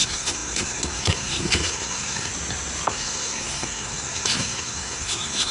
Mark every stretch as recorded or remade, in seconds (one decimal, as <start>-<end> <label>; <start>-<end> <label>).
0.0-2.3 remade; 2.3-2.9 recorded; 2.9-5.5 remade